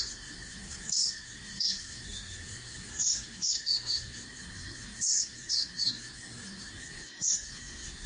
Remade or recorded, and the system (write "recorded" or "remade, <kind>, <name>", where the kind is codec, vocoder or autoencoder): remade, codec, SNAC